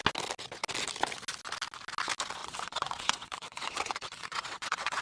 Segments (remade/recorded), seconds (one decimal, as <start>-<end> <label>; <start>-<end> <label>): 0.0-2.4 recorded; 2.4-5.0 remade